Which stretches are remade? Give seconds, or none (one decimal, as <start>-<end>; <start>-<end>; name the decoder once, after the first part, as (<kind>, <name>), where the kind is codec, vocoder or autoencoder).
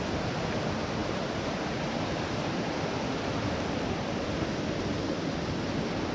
1.0-2.8 (vocoder, BigVGAN v2)